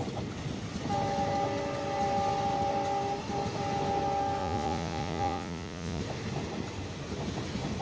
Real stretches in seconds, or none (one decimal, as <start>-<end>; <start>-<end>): 0.0-4.4; 6.0-7.8